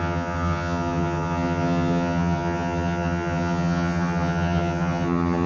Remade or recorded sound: remade